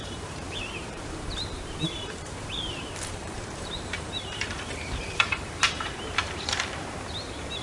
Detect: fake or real fake